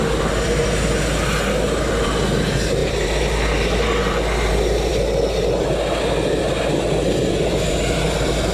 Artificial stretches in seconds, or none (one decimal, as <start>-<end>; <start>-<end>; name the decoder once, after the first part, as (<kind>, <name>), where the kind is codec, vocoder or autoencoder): none